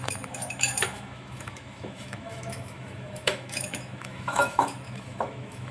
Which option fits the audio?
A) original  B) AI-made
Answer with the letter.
B